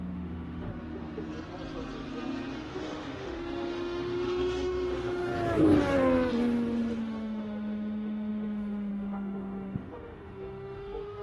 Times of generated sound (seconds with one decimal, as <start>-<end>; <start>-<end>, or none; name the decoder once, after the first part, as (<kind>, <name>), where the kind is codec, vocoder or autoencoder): 0.0-0.7 (autoencoder, DAC-VAE); 2.5-5.3; 7.0-11.2